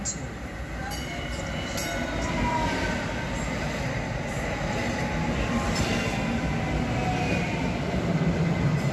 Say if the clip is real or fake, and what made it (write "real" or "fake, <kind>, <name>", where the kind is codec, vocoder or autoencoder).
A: real